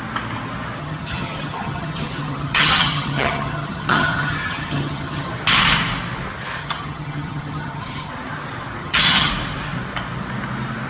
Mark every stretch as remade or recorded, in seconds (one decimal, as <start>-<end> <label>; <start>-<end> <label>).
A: 0.0-0.8 recorded; 0.8-5.3 remade; 5.3-6.6 recorded; 6.6-8.1 remade; 8.1-8.8 recorded; 8.8-9.3 remade; 9.3-10.9 recorded